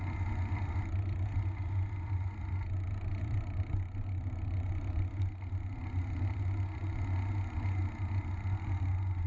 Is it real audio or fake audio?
real